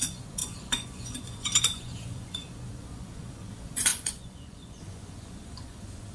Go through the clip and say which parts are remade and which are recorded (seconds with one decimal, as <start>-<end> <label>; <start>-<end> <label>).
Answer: 0.0-6.1 remade